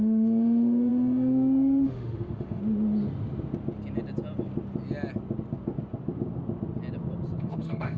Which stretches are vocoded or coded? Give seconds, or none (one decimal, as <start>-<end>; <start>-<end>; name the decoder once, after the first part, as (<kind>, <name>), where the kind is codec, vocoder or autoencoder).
0.0-2.6 (autoencoder, DAC-VAE); 7.4-8.0